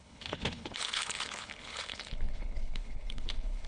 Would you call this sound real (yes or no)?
no